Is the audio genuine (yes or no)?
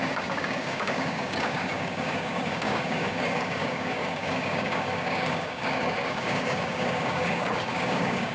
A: no